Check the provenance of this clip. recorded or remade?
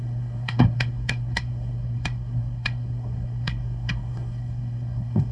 remade